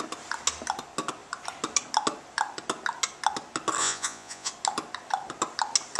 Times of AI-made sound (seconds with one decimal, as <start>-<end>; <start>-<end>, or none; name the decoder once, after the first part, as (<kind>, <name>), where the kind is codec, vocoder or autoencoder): 3.8-4.5 (vocoder, Vocos)